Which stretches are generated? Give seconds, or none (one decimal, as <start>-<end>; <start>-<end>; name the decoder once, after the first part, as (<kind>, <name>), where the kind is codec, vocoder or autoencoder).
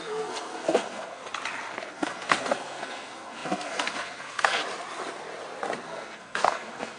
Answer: 0.0-1.2 (codec, SNAC); 1.7-4.6; 5.8-7.0